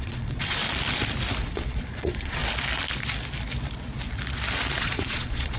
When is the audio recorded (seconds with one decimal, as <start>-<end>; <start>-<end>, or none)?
0.6-1.4; 2.4-4.8